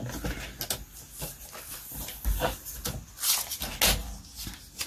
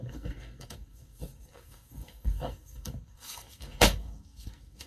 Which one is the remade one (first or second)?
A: second